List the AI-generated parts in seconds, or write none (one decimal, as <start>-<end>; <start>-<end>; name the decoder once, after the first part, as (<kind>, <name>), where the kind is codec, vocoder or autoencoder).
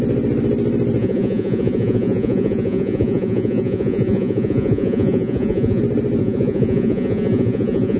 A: 1.0-5.8 (vocoder, Vocos); 6.2-8.0